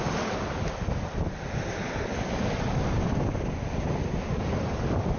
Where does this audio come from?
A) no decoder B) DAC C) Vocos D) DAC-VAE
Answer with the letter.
A